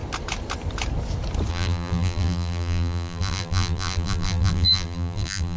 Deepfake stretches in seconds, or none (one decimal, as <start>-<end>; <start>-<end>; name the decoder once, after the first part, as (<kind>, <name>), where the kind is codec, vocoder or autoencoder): 1.5-5.6 (vocoder, BigVGAN v2)